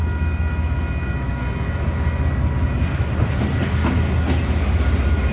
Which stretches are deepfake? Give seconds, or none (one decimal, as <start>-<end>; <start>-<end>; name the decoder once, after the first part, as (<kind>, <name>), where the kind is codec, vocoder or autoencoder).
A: 3.2-3.8 (vocoder, BigVGAN v2)